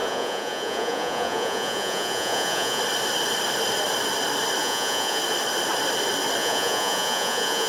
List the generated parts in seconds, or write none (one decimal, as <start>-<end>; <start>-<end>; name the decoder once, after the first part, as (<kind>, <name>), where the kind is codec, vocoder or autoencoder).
0.0-2.8 (vocoder, Vocos); 4.6-5.2; 6.4-7.7